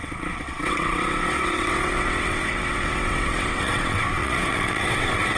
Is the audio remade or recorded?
remade